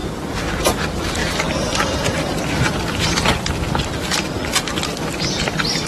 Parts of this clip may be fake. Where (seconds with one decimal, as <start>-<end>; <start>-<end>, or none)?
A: 1.2-2.6